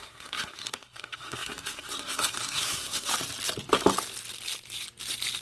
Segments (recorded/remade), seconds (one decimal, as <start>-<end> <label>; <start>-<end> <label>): 0.0-3.1 remade; 3.1-5.4 recorded